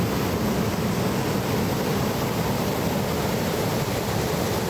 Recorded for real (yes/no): yes